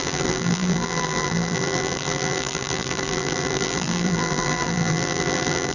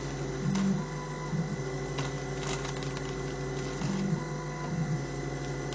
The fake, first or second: first